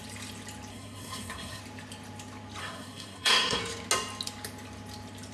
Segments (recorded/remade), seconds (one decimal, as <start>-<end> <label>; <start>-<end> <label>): 0.0-0.7 recorded; 0.7-1.6 remade; 1.6-2.6 recorded; 2.6-3.6 remade; 3.6-5.3 recorded